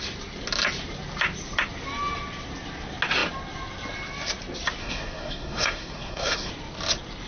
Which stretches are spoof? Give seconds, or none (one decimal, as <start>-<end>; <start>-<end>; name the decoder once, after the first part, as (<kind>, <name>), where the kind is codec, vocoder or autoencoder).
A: 4.8-6.5 (codec, SNAC)